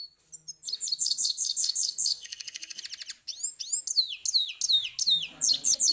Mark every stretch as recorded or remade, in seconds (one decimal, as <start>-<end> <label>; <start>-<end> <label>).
0.0-1.0 recorded; 1.0-2.8 remade; 2.8-5.9 recorded